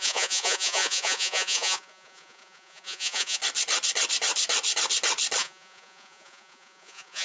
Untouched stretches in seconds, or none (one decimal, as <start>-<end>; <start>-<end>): 3.4-5.4